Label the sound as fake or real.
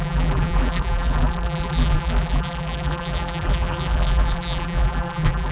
fake